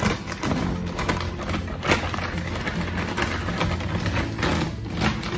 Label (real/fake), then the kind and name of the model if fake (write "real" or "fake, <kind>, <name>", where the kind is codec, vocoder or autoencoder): real